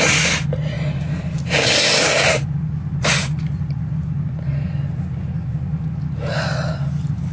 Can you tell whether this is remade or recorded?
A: recorded